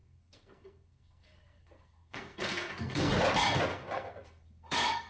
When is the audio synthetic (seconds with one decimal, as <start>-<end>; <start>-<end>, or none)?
0.0-3.1; 3.7-5.1